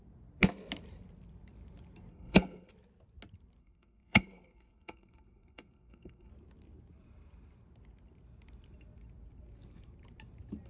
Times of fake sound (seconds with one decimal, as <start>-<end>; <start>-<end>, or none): 2.1-2.7; 3.6-6.3